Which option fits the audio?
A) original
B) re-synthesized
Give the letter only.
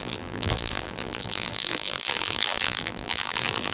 B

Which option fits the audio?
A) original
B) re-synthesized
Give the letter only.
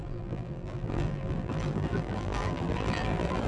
B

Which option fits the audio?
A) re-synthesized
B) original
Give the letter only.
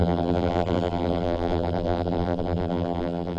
A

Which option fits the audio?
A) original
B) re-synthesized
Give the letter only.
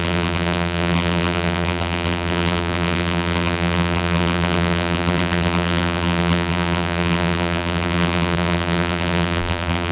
B